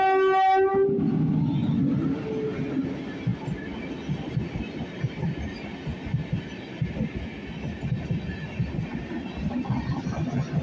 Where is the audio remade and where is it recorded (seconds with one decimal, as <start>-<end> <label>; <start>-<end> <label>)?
0.0-10.6 recorded